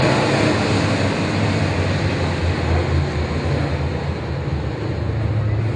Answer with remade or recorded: recorded